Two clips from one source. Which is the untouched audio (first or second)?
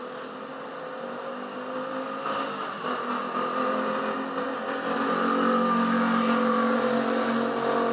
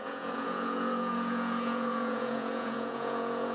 first